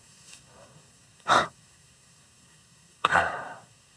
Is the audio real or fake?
fake